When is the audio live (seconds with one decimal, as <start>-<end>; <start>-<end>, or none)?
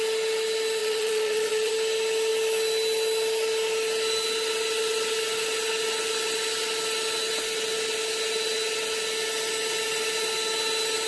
0.0-0.8; 1.7-11.1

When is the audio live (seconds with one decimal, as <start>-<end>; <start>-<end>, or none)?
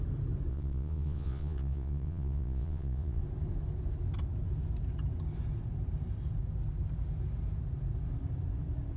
0.0-0.5; 3.2-9.0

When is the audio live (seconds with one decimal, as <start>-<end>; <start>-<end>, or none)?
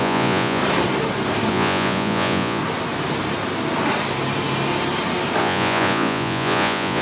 0.6-1.5; 2.6-5.4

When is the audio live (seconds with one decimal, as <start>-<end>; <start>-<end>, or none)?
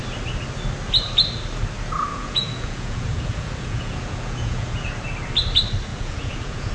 0.0-2.1; 4.9-5.9